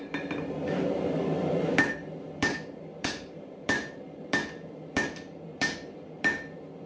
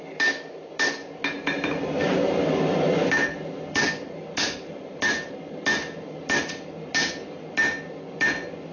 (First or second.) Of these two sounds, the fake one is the first